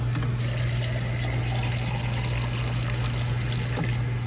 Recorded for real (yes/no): yes